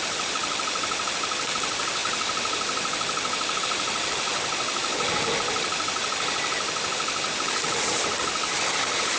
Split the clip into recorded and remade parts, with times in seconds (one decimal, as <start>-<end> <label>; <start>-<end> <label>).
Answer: 0.0-9.2 recorded